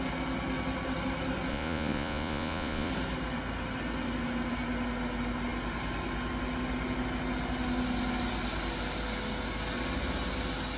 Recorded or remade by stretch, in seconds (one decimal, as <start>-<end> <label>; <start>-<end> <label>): 0.0-1.5 recorded; 1.5-2.9 remade; 2.9-10.8 recorded